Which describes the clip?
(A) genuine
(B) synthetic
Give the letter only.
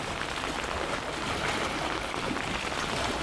A